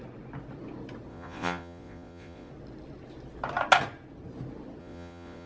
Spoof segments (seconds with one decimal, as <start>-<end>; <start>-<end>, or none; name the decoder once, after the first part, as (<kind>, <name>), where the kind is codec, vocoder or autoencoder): 1.1-2.5 (vocoder, Vocos); 4.8-5.5